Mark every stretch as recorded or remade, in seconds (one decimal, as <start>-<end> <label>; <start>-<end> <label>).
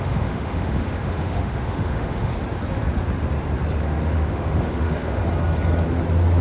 0.0-2.3 remade; 2.3-3.8 recorded; 3.8-5.2 remade; 5.2-6.4 recorded